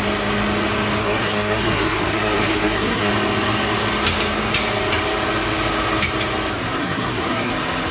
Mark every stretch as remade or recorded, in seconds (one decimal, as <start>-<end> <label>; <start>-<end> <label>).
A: 0.0-1.0 recorded; 1.0-3.1 remade; 3.1-6.8 recorded; 6.8-7.5 remade; 7.5-7.9 recorded